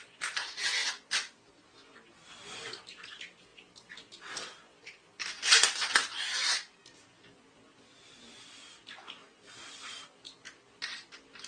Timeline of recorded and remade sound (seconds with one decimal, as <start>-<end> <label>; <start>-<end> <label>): 0.0-11.5 recorded